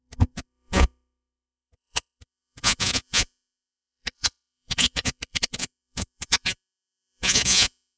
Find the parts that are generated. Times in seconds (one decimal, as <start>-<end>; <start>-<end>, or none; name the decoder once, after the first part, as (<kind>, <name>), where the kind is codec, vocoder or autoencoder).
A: 0.0-8.0 (vocoder, Vocos)